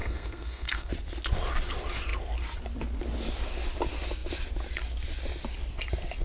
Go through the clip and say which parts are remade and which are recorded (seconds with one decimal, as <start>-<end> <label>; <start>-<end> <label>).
0.0-0.9 remade; 0.9-6.2 recorded